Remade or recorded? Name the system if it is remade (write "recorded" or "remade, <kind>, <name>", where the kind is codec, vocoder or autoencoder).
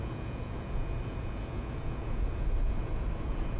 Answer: remade, vocoder, Vocos